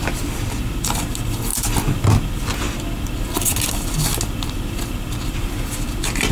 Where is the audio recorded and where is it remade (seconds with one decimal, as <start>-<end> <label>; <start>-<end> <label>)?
0.0-6.3 recorded